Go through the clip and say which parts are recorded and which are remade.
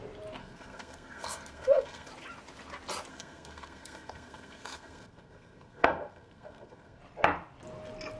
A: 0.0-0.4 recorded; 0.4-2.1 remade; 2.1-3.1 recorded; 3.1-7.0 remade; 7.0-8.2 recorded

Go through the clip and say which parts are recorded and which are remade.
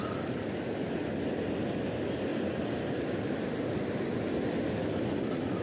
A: 0.0-2.3 recorded; 2.3-4.7 remade; 4.7-5.6 recorded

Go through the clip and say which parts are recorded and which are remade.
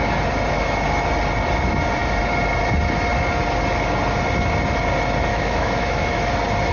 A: 0.0-5.3 recorded; 5.3-6.3 remade; 6.3-6.7 recorded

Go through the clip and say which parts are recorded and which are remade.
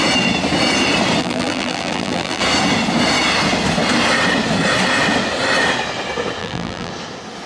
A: 0.0-1.2 recorded; 1.2-2.4 remade; 2.4-6.4 recorded; 6.4-6.9 remade; 6.9-7.5 recorded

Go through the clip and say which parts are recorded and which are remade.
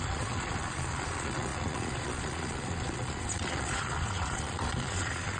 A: 0.0-5.4 remade